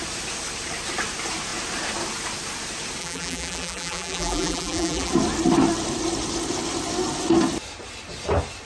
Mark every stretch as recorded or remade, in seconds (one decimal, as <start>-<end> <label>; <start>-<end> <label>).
0.0-3.0 recorded; 3.0-5.1 remade; 5.1-8.7 recorded